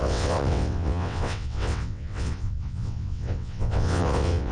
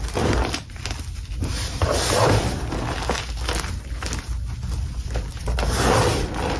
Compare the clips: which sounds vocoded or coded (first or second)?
first